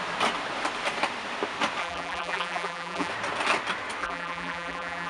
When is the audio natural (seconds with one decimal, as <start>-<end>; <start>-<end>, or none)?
0.0-1.8; 3.1-4.0